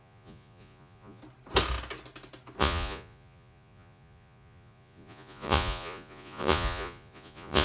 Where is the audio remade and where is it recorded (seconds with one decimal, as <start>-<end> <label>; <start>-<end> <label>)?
0.0-1.2 remade; 1.2-2.6 recorded; 2.6-7.6 remade